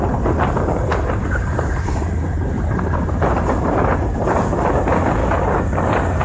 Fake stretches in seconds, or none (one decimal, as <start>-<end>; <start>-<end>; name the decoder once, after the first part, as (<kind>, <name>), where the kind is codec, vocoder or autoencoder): 1.2-4.8 (vocoder, BigVGAN v2)